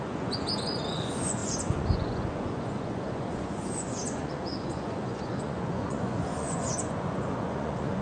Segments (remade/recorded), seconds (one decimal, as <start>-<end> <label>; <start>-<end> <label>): 0.0-8.0 remade